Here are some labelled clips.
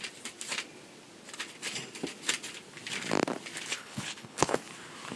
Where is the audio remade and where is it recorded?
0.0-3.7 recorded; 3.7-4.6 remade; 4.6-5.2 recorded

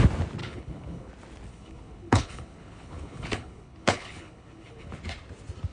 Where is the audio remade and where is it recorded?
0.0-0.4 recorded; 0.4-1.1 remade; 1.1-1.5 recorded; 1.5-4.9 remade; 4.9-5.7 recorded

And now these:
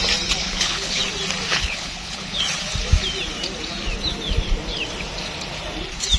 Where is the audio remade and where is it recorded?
0.0-0.4 recorded; 0.4-1.0 remade; 1.0-1.5 recorded; 1.5-2.4 remade; 2.4-6.2 recorded